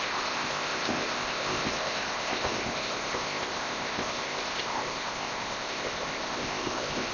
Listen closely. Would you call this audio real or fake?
fake